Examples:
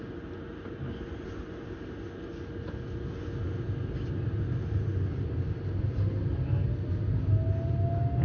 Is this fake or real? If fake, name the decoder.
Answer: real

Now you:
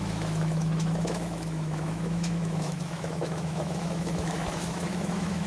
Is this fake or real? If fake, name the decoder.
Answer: fake, autoencoder, DAC-VAE